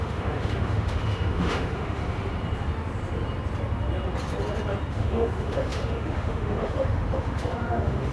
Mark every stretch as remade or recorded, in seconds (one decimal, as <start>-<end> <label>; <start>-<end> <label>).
0.0-2.0 remade; 2.0-4.9 recorded; 4.9-8.1 remade